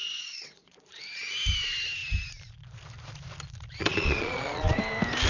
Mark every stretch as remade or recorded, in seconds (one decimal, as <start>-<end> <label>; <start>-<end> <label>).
0.0-1.0 remade; 1.0-3.8 recorded; 3.8-4.7 remade; 4.7-5.3 recorded